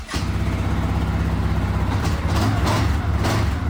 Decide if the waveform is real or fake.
real